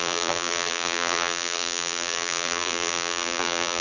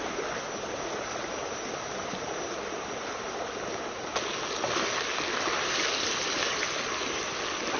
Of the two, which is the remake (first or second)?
first